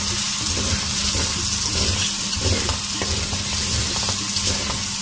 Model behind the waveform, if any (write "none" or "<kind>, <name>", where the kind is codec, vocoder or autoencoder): none